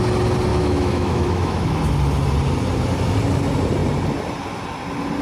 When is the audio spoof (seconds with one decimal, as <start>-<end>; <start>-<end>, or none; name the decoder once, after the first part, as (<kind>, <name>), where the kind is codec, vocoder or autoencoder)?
0.5-1.8 (autoencoder, DAC-VAE)